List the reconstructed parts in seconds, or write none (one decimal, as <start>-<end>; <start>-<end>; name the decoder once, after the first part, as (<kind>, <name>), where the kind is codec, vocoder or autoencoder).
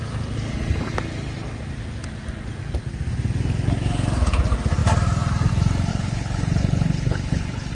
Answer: 5.9-7.7 (codec, HILCodec)